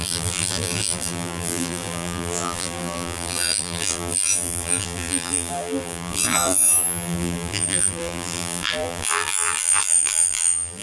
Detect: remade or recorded remade